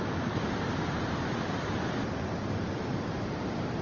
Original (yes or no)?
yes